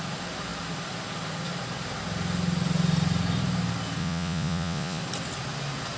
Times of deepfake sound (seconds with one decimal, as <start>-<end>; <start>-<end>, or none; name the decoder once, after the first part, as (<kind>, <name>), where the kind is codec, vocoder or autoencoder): 4.0-5.0 (vocoder, Vocos)